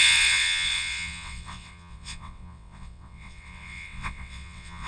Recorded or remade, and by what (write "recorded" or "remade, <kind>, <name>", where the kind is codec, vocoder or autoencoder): remade, vocoder, WaveNeXt